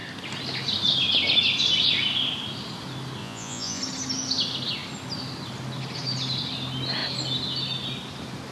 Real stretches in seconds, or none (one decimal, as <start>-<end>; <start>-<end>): 0.0-3.2; 3.8-8.5